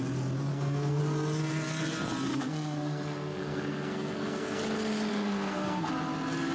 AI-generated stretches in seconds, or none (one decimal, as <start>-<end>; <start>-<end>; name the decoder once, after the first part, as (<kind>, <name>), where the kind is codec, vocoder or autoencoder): 0.5-1.0 (codec, SNAC); 2.3-4.6; 5.1-5.9